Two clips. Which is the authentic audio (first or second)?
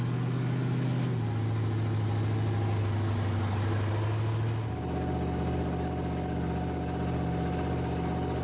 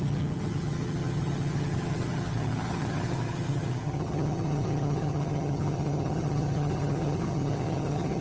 first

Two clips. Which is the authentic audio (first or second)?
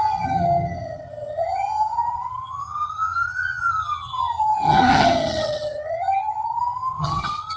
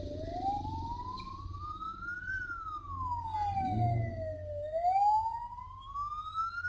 second